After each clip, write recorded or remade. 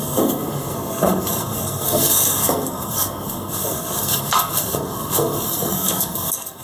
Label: remade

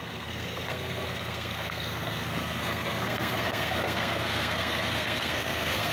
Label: remade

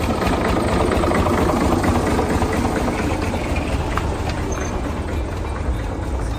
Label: recorded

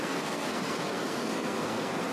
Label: remade